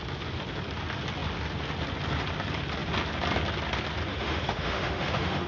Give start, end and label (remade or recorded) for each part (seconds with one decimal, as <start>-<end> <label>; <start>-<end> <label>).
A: 0.0-4.1 recorded; 4.1-5.5 remade